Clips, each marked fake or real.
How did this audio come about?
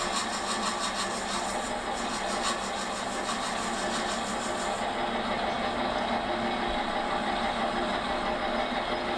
real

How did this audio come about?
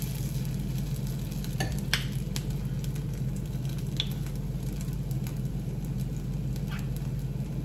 real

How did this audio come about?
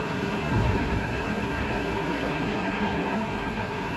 fake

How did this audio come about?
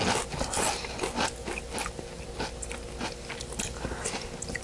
real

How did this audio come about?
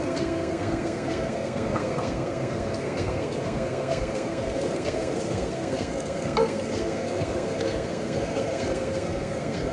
fake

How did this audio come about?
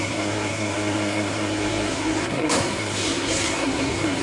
fake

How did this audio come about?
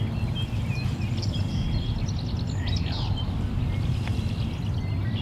real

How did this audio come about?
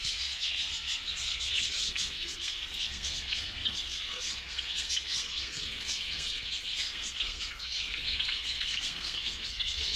fake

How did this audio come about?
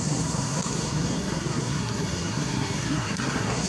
fake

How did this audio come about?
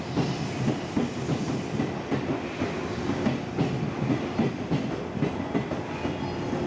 real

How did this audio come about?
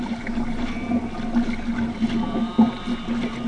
real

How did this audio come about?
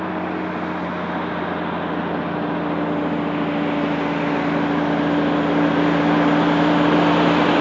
real